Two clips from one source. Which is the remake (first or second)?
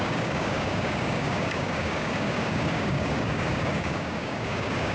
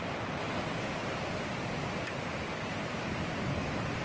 first